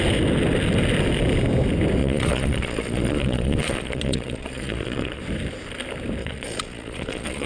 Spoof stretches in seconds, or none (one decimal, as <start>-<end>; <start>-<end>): 2.0-5.2; 6.2-7.5